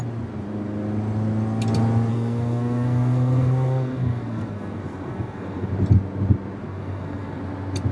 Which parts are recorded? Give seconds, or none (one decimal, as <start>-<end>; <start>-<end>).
0.0-2.1; 5.7-6.7; 7.4-7.9